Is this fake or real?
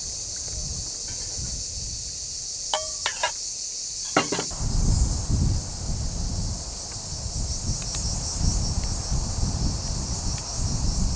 real